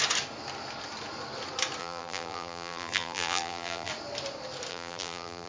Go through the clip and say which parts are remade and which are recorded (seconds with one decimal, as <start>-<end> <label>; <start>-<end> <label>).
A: 0.0-1.8 recorded; 1.8-3.9 remade; 3.9-4.7 recorded; 4.7-5.5 remade